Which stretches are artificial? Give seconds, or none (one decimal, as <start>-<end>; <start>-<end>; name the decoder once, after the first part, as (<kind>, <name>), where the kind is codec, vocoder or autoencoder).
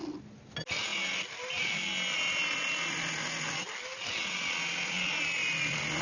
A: none